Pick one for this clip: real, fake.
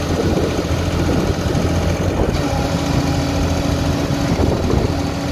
real